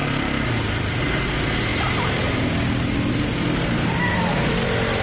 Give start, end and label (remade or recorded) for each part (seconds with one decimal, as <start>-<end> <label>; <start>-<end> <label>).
0.0-1.7 recorded; 1.7-2.5 remade; 2.5-5.0 recorded